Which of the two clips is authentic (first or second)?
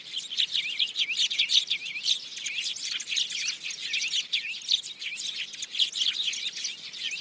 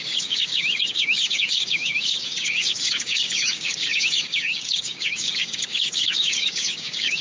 first